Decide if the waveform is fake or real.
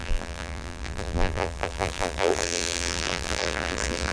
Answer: fake